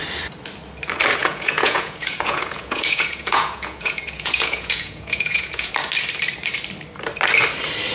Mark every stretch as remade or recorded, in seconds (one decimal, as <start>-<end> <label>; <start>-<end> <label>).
0.0-1.2 recorded; 1.2-5.7 remade; 5.7-7.9 recorded